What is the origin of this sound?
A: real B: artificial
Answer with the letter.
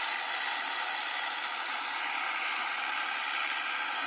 A